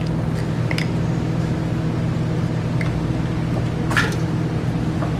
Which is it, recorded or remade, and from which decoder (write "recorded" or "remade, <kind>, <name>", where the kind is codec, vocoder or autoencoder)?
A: recorded